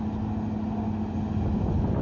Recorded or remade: recorded